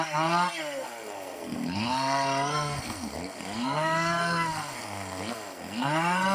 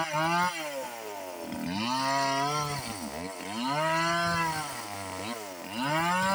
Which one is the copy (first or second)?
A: first